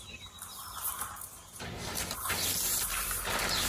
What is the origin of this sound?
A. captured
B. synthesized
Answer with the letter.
A